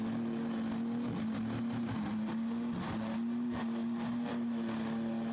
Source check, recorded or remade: recorded